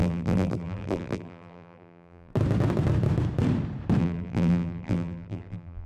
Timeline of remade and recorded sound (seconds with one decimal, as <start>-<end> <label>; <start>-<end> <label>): 0.0-2.3 remade; 2.3-4.0 recorded; 4.0-5.9 remade